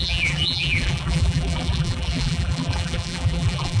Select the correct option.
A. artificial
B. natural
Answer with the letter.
A